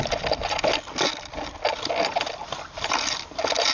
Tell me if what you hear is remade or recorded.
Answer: recorded